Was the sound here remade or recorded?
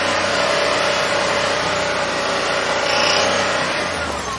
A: recorded